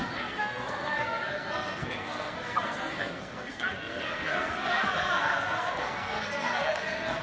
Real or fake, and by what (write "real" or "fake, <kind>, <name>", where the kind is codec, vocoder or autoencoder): fake, codec, SNAC